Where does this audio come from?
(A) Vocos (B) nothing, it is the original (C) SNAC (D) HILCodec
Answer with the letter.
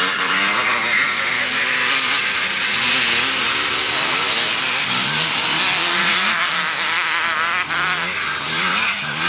B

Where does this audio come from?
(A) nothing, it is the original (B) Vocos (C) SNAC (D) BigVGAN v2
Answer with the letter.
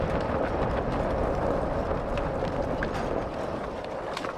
A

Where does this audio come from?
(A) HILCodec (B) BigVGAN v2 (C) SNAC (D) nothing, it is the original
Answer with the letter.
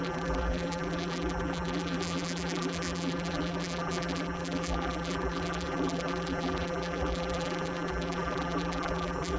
B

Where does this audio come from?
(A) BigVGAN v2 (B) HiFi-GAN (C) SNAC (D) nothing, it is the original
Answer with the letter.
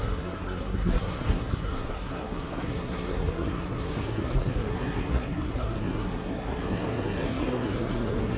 C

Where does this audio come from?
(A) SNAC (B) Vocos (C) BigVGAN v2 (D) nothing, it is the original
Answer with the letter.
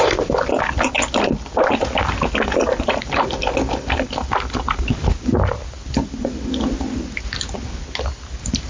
D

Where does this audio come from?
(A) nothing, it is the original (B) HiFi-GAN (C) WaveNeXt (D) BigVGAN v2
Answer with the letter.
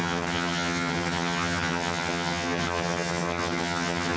B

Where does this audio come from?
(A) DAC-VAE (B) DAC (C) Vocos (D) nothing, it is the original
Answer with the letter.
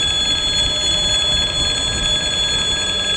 D